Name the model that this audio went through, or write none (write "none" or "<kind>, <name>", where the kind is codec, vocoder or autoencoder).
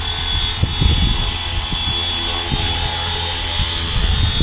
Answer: none